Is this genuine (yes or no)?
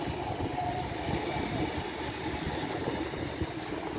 yes